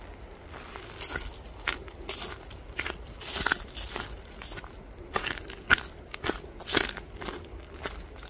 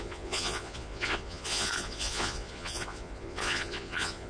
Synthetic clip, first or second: second